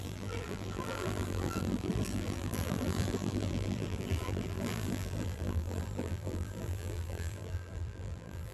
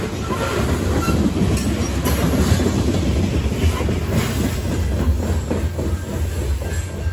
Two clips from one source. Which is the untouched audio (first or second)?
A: second